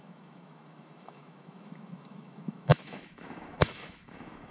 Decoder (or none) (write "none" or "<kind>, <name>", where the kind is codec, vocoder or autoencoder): autoencoder, DAC-VAE